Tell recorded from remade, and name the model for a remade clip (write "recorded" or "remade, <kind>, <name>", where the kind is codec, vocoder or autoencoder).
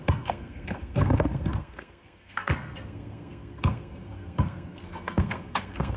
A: remade, codec, SNAC